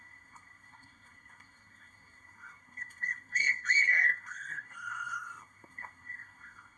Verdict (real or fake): fake